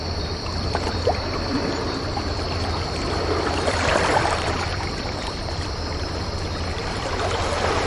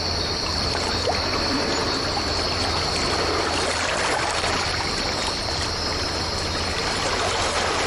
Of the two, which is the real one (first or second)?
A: second